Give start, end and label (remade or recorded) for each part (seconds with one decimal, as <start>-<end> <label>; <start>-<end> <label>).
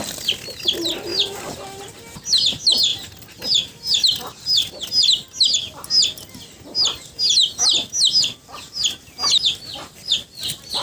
0.0-1.1 recorded; 1.1-1.8 remade; 1.8-10.8 recorded